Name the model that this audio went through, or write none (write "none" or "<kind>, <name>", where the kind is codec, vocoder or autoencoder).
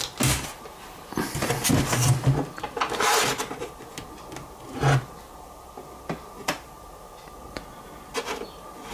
none